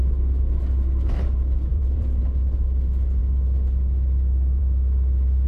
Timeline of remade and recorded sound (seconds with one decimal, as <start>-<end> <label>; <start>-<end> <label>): 0.0-1.7 recorded; 1.7-2.2 remade; 2.2-5.5 recorded